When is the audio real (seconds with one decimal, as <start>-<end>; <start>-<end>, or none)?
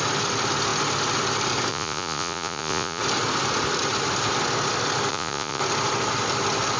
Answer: 0.0-1.7; 3.0-5.1; 5.6-6.8